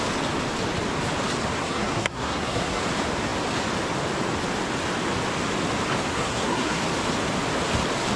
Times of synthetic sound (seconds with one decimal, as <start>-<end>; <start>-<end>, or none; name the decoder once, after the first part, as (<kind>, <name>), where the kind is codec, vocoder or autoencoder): 1.6-2.8 (codec, SNAC); 6.1-6.8